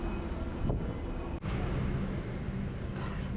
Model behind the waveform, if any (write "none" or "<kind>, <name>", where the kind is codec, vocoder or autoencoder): none